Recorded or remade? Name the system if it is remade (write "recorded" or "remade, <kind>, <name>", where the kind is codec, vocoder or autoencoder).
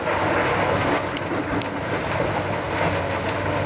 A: recorded